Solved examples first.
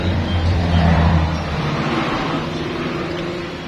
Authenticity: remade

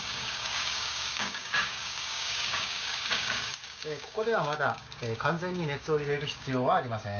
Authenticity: remade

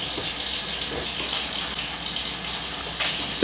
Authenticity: recorded